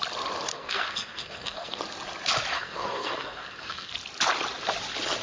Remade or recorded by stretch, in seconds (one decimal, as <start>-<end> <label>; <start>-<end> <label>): 0.0-0.5 recorded; 0.5-1.8 remade; 1.8-2.5 recorded; 2.5-3.9 remade; 3.9-5.2 recorded